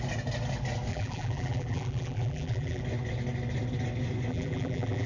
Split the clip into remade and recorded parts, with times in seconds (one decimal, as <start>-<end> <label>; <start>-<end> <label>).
0.0-0.9 recorded; 0.9-2.8 remade; 2.8-4.3 recorded; 4.3-5.1 remade